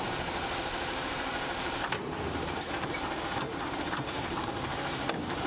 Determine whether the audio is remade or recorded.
remade